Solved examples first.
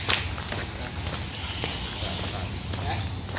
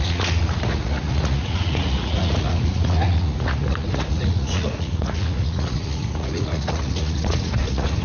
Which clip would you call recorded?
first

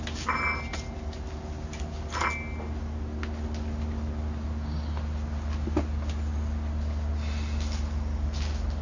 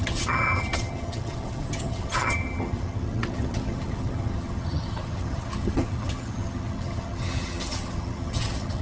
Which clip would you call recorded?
first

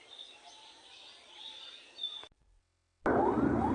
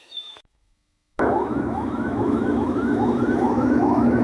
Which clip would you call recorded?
first